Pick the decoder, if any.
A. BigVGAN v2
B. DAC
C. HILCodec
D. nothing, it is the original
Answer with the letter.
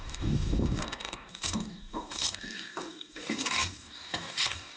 B